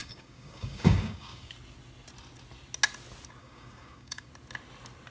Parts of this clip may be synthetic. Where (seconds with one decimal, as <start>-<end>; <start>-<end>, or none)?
0.0-1.5; 3.4-4.3